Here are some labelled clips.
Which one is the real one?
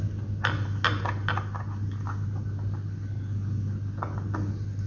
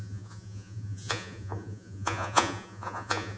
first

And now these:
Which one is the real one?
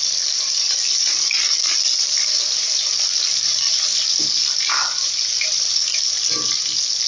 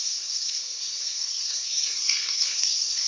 first